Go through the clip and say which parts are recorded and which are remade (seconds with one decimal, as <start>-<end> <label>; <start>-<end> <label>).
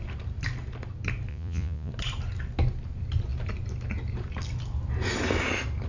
0.0-1.3 recorded; 1.3-1.9 remade; 1.9-5.9 recorded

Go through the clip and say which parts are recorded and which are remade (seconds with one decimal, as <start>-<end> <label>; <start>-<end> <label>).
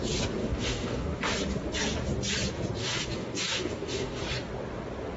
0.0-0.4 recorded; 0.4-1.2 remade; 1.2-2.8 recorded; 2.8-4.2 remade; 4.2-5.2 recorded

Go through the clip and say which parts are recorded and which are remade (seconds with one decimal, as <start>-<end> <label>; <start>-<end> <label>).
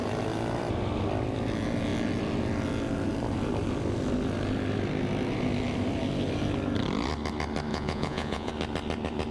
0.0-7.7 recorded; 7.7-8.5 remade; 8.5-9.3 recorded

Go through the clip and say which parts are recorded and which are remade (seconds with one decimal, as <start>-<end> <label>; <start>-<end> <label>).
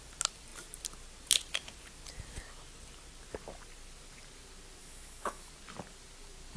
0.0-4.8 recorded; 4.8-5.5 remade; 5.5-6.6 recorded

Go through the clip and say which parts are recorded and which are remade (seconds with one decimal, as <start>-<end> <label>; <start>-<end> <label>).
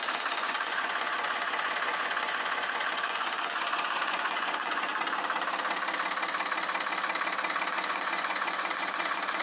0.0-4.9 remade; 4.9-7.7 recorded; 7.7-9.4 remade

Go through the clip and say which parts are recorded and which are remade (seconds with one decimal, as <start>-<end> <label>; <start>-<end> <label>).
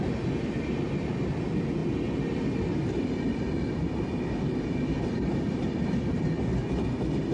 0.0-1.8 recorded; 1.8-3.7 remade; 3.7-5.2 recorded; 5.2-6.2 remade; 6.2-7.3 recorded